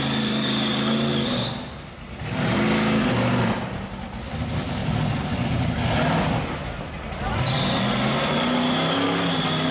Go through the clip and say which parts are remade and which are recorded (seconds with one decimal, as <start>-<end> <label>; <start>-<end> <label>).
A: 0.0-9.7 recorded